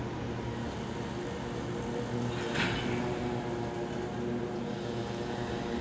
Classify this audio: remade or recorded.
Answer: recorded